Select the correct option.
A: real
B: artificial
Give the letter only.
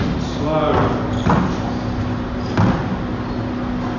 A